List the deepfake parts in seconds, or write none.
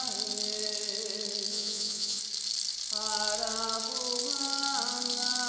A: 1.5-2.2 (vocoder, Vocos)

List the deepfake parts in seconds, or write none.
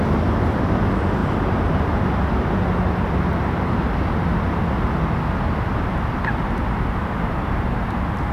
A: none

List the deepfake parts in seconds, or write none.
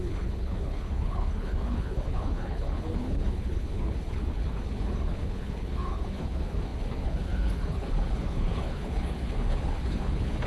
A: 0.0-10.5 (codec, HILCodec)